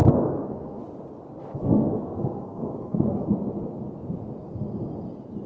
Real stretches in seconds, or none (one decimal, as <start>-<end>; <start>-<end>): 0.8-1.4; 3.3-5.5